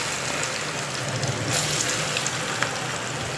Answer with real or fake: real